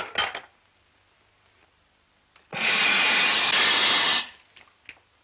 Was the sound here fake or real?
real